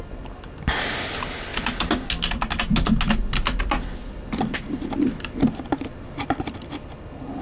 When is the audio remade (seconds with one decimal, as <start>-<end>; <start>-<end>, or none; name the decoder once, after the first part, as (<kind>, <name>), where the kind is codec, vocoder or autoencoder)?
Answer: none